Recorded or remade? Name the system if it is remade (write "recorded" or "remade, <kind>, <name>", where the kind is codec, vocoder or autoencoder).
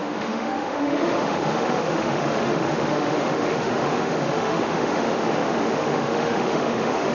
remade, autoencoder, DAC-VAE